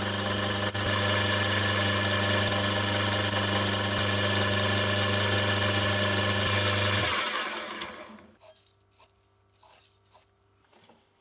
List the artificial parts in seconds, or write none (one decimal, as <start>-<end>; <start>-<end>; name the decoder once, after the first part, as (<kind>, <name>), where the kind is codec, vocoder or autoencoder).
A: none